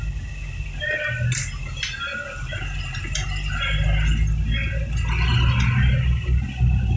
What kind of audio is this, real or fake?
real